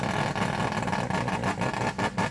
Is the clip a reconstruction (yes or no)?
no